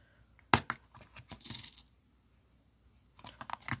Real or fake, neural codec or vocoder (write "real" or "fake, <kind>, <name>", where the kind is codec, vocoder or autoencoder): real